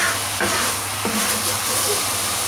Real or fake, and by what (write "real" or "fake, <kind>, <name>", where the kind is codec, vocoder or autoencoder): real